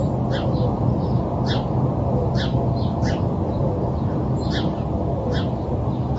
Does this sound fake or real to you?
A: real